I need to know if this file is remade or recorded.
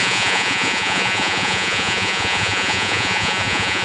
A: remade